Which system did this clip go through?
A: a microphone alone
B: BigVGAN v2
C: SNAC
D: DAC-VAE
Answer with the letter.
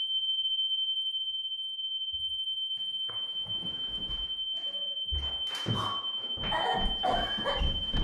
B